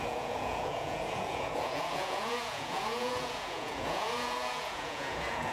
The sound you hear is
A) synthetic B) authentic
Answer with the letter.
A